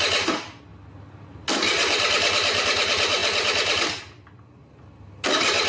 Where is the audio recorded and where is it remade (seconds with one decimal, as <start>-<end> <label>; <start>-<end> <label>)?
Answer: 0.0-5.7 recorded